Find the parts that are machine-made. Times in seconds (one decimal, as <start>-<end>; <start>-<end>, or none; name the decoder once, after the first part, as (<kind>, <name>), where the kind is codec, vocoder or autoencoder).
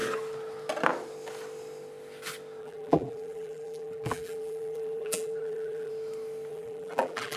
2.6-5.9 (vocoder, BigVGAN v2); 6.5-7.4